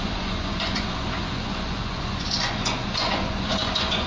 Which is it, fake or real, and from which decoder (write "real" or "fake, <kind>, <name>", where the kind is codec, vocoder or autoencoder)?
fake, vocoder, Vocos